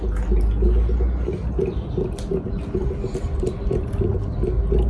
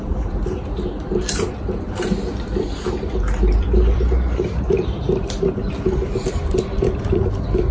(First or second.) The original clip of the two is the first